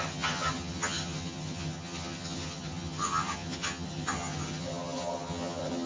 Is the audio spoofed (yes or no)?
yes